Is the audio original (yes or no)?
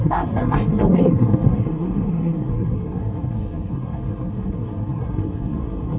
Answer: no